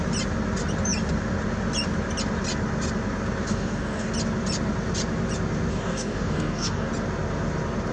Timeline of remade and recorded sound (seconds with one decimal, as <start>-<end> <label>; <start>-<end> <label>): 0.0-3.5 recorded; 3.5-4.1 remade; 4.1-5.7 recorded; 5.7-6.9 remade; 6.9-7.9 recorded